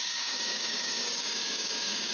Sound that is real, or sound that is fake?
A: fake